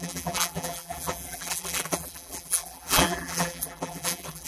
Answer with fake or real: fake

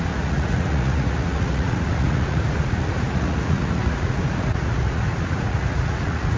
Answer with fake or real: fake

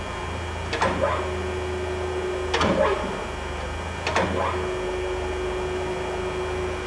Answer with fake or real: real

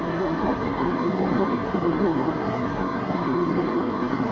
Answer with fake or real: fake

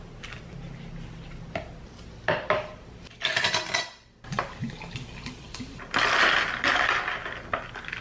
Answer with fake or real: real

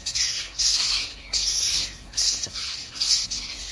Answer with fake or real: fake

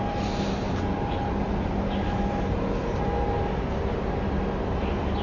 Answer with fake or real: real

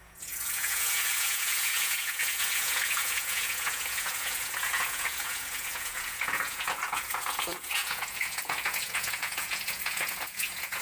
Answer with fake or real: fake